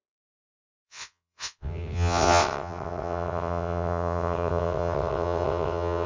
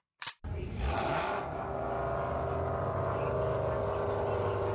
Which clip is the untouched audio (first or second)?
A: second